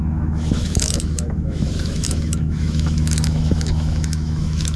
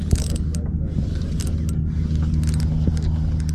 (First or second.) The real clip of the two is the second